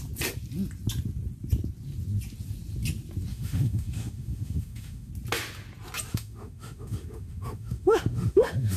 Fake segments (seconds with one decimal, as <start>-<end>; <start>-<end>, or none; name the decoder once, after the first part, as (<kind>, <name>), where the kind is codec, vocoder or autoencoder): 3.3-5.1 (autoencoder, DAC-VAE); 6.1-8.8